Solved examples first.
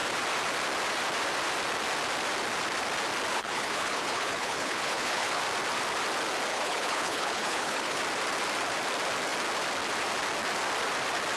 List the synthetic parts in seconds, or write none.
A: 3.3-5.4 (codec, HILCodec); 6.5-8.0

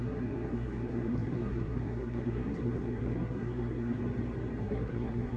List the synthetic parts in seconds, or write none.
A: 0.0-4.0 (codec, SNAC); 4.6-5.4

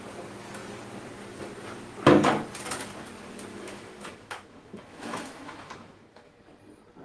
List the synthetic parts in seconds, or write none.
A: 3.5-6.4 (autoencoder, DAC-VAE)

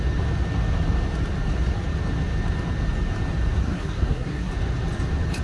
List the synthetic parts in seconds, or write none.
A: 3.6-4.5 (codec, SNAC)

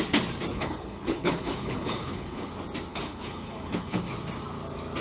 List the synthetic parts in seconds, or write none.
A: 0.5-2.5 (codec, HILCodec); 2.9-4.0

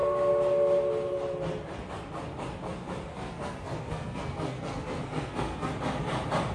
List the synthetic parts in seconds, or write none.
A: 3.1-5.7 (codec, SNAC)